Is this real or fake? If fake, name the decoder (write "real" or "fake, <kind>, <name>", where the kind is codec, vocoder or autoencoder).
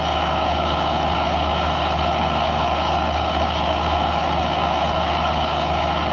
fake, codec, HILCodec